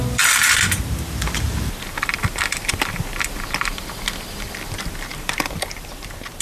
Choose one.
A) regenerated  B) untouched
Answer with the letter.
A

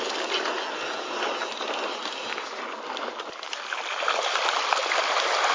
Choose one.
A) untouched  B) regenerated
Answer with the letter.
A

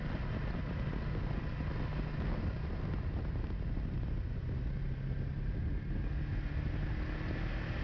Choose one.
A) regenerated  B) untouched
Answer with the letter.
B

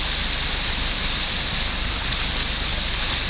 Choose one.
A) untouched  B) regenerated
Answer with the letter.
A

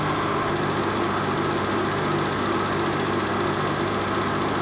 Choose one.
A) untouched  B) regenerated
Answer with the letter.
A